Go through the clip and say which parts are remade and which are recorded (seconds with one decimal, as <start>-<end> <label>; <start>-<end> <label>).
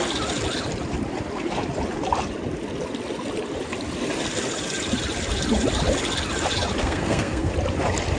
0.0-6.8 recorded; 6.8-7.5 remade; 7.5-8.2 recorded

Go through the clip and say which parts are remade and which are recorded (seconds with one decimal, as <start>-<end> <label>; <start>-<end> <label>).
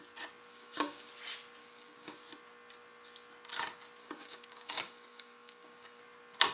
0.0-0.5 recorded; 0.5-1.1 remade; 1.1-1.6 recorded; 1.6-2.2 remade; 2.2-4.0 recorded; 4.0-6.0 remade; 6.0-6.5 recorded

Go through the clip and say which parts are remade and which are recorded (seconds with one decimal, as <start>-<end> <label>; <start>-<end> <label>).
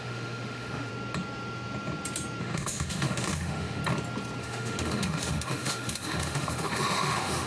0.0-0.9 remade; 0.9-2.4 recorded; 2.4-3.8 remade; 3.8-4.4 recorded; 4.4-7.5 remade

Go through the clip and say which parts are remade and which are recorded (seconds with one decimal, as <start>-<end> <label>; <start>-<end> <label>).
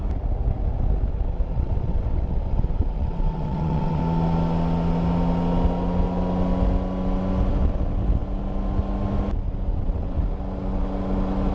0.0-1.5 recorded; 1.5-4.0 remade; 4.0-9.7 recorded; 9.7-10.2 remade; 10.2-11.5 recorded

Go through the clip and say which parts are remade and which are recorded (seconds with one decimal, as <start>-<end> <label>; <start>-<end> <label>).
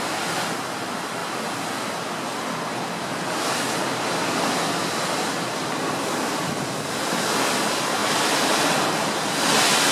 0.0-5.6 recorded; 5.6-6.4 remade; 6.4-8.0 recorded; 8.0-8.6 remade; 8.6-9.9 recorded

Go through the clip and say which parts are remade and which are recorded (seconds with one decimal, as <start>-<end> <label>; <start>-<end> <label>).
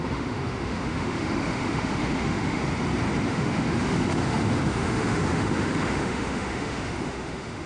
0.0-2.6 remade; 2.6-3.3 recorded; 3.3-7.7 remade